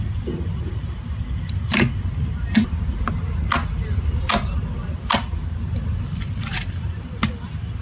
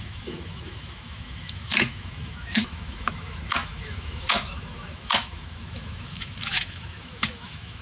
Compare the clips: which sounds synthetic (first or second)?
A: second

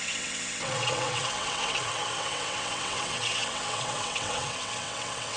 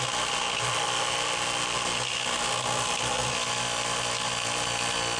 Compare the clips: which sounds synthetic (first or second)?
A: first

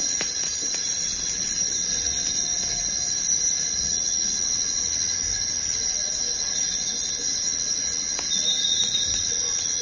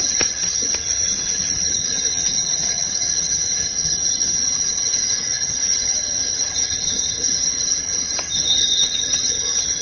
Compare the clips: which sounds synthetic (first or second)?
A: second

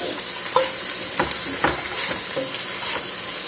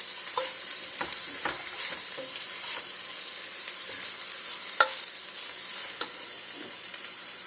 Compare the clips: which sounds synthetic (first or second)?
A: second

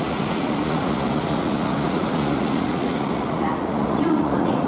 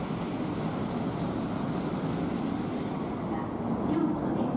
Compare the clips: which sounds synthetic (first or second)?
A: first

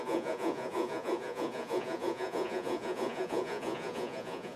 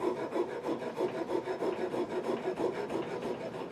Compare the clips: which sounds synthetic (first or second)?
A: first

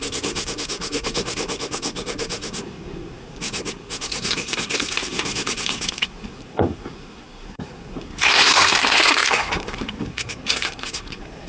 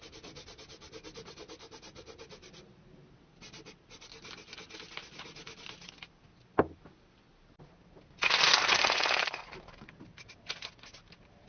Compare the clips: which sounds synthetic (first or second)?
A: first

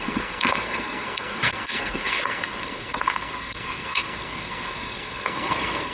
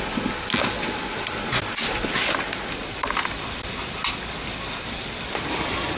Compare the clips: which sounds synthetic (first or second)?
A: first